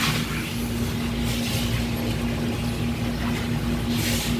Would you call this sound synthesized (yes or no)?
no